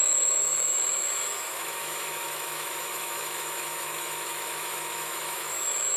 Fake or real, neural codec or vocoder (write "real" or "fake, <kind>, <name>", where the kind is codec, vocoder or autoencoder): fake, autoencoder, DAC-VAE